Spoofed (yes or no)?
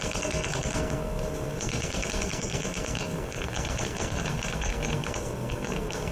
yes